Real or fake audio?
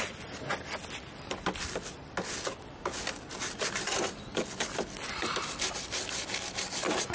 real